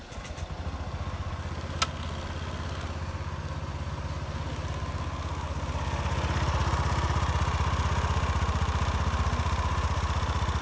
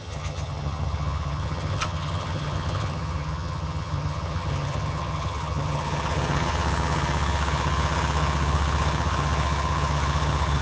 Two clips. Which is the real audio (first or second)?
first